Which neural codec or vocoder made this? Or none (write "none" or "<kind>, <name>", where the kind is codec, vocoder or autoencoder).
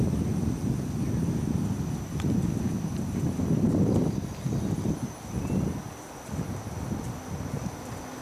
none